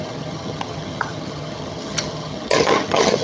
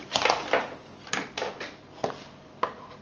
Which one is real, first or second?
second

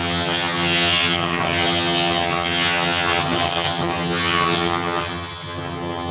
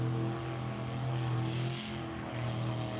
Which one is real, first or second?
second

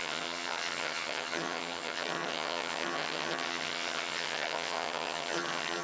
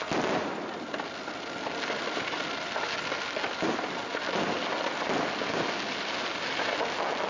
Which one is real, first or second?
second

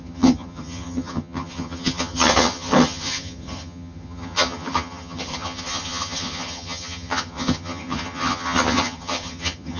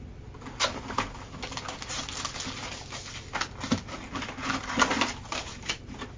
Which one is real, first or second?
second